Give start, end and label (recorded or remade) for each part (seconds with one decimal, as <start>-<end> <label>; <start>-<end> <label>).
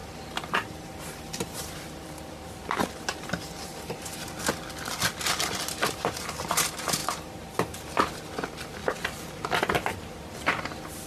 0.0-4.4 remade; 4.4-8.8 recorded; 8.8-9.4 remade; 9.4-11.1 recorded